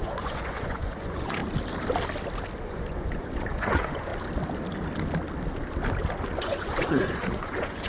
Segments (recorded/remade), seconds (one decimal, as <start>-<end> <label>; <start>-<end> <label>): 0.0-1.4 remade; 1.4-2.6 recorded; 2.6-4.1 remade; 4.1-6.3 recorded; 6.3-7.9 remade